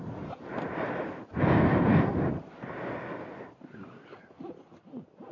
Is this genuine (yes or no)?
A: yes